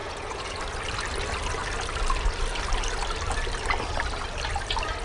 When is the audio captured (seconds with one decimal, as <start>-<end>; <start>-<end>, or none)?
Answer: 0.6-5.0